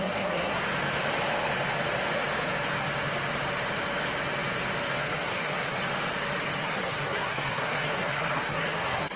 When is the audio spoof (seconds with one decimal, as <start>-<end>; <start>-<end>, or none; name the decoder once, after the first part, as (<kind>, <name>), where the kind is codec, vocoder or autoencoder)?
0.0-0.6 (codec, SNAC); 4.9-5.8; 6.6-9.2